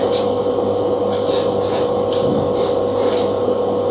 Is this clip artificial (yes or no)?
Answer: no